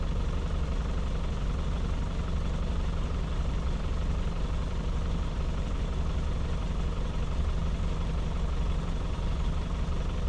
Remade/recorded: remade